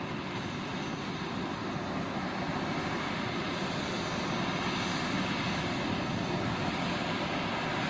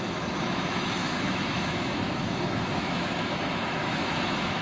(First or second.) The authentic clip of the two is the first